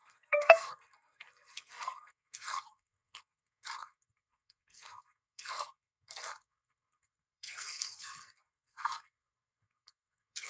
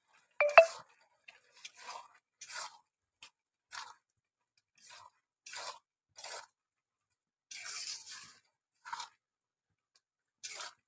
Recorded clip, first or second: second